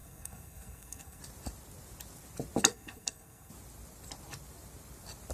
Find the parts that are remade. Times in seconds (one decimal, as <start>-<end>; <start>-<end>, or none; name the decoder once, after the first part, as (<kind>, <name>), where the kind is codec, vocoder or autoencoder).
0.0-1.2 (codec, SNAC); 2.7-3.5